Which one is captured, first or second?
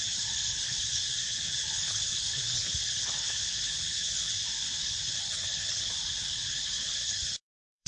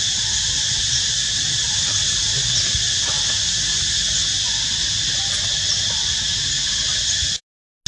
second